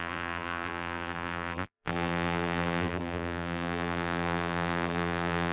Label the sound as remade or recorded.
remade